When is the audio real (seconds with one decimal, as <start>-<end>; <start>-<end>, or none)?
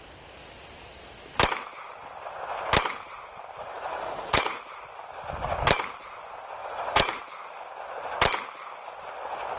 0.0-3.6; 4.6-6.6; 7.2-9.6